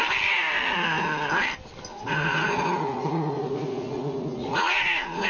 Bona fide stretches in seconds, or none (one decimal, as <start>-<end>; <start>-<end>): 0.0-1.9